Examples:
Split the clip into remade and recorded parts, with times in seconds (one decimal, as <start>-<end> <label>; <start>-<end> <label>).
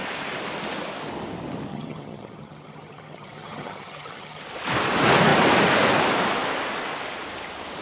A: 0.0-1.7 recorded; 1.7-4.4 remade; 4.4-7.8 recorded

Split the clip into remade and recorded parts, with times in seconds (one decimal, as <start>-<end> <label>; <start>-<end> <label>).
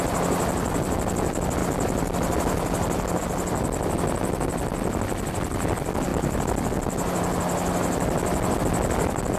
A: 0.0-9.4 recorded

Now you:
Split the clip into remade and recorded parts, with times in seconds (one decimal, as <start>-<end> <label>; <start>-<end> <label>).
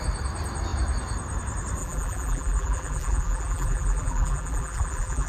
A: 0.0-1.8 recorded; 1.8-5.3 remade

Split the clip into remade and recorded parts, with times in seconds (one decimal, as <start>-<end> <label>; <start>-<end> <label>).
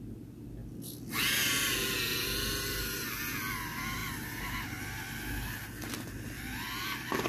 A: 0.0-7.3 recorded